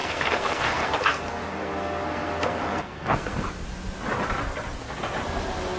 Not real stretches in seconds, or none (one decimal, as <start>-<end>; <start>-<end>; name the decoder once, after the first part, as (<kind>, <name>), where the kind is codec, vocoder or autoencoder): 0.0-3.5 (codec, SNAC)